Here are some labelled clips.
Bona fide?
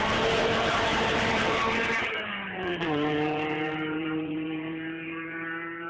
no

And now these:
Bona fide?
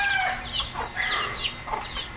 yes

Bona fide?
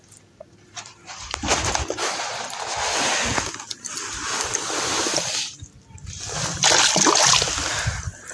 yes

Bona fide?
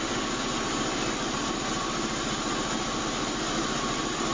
yes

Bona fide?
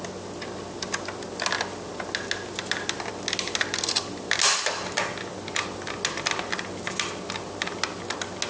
yes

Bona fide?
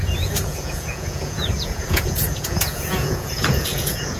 no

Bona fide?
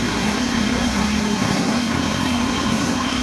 no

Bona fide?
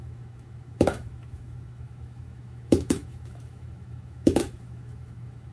no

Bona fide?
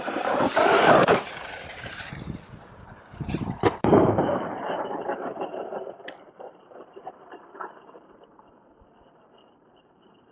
no